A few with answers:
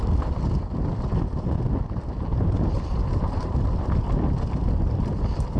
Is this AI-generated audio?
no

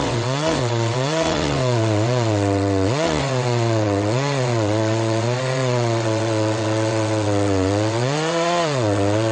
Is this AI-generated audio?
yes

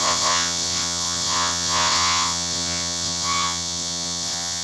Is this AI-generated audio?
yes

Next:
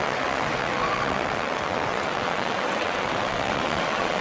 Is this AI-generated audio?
yes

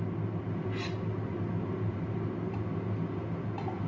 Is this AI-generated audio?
no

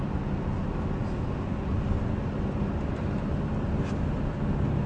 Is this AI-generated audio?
no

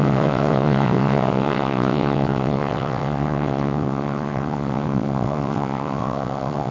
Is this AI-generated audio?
yes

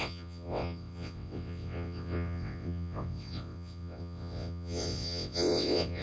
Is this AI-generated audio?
yes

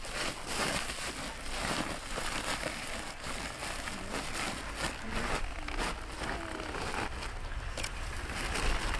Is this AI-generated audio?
no